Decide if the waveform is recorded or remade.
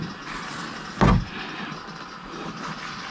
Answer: recorded